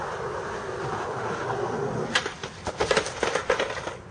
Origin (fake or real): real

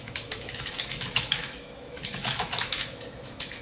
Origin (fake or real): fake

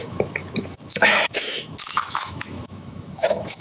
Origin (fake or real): fake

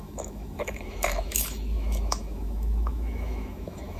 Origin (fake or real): fake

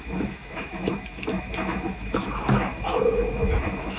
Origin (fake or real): fake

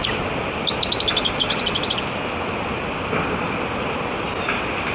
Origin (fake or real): real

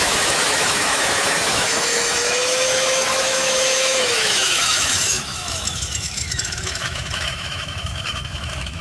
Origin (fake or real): fake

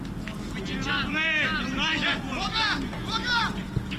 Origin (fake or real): real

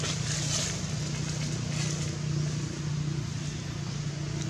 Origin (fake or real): real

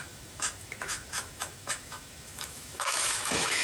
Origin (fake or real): fake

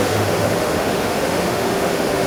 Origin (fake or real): fake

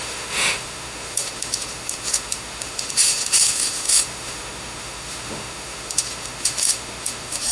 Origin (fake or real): fake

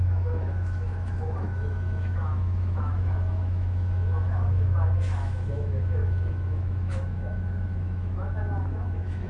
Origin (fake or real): fake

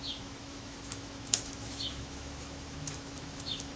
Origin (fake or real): fake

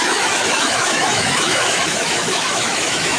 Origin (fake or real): fake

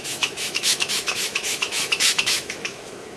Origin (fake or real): fake